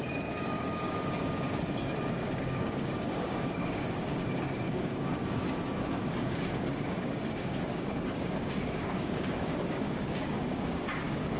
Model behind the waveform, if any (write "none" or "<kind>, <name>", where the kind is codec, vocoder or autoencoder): codec, DAC